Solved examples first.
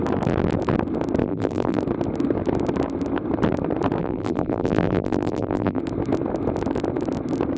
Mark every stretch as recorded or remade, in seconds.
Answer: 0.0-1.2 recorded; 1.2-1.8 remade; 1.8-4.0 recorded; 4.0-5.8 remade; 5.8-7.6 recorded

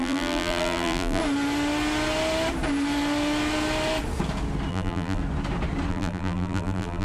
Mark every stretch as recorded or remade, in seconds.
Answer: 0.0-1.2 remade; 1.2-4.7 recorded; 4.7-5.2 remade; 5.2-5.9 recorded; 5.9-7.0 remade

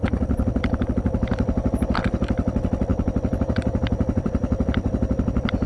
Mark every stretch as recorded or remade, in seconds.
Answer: 0.0-2.9 recorded; 2.9-5.7 remade

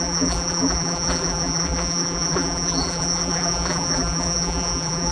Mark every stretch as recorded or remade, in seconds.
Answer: 0.0-5.1 remade

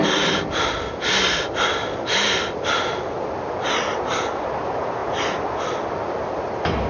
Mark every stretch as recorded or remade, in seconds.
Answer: 0.0-6.9 recorded